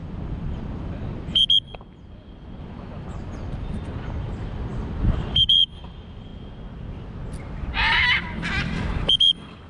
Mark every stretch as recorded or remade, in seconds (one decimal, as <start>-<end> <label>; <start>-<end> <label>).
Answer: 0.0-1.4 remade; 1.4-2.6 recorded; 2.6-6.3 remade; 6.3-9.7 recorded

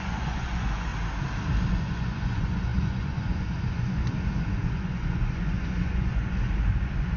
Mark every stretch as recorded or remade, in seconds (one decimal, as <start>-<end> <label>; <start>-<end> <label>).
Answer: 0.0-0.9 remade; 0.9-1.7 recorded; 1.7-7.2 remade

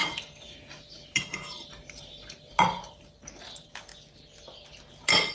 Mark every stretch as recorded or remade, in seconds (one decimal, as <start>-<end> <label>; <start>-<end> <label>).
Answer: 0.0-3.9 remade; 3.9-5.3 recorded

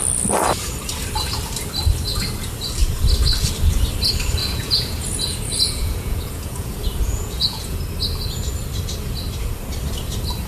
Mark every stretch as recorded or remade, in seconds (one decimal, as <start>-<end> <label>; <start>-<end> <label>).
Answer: 0.0-4.4 recorded; 4.4-7.8 remade; 7.8-10.5 recorded

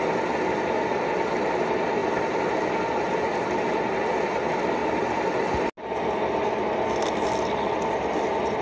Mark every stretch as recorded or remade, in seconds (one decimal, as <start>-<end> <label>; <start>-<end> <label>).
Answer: 0.0-8.6 recorded

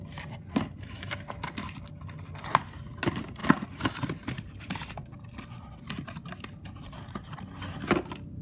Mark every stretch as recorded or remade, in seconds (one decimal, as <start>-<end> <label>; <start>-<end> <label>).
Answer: 0.0-8.4 recorded

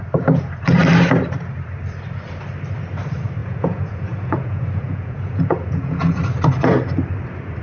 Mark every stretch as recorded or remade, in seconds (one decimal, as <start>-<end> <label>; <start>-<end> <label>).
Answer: 0.0-3.4 recorded; 3.4-6.2 remade; 6.2-7.6 recorded